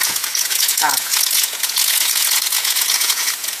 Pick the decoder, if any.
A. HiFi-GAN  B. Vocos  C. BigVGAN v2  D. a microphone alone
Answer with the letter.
B